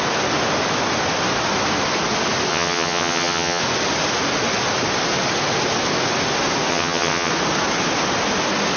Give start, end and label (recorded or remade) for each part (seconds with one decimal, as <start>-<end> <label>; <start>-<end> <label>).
0.0-2.5 recorded; 2.5-3.6 remade; 3.6-6.7 recorded; 6.7-7.3 remade; 7.3-8.8 recorded